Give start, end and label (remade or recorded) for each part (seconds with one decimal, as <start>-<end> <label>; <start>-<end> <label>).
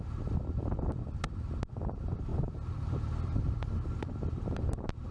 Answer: 0.0-2.3 recorded; 2.3-2.9 remade; 2.9-3.3 recorded; 3.3-3.9 remade; 3.9-5.1 recorded